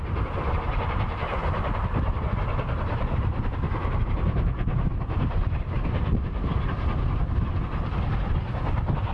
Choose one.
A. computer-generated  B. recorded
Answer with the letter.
B